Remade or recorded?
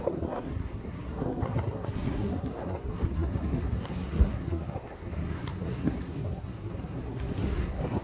remade